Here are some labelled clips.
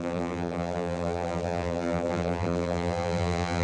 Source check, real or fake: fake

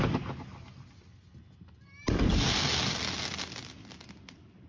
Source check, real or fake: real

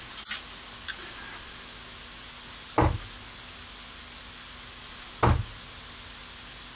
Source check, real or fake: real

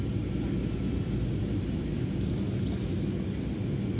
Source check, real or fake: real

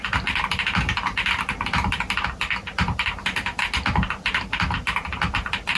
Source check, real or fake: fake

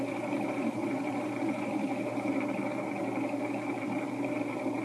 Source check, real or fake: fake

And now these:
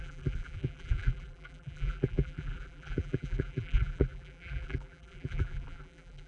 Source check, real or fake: fake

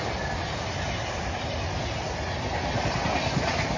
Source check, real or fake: real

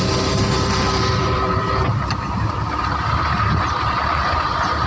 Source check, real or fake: fake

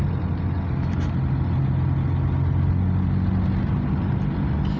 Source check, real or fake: real